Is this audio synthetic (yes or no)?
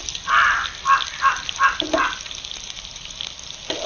no